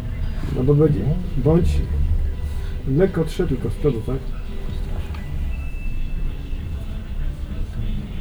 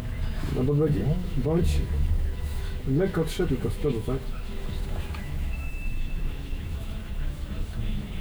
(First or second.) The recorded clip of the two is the first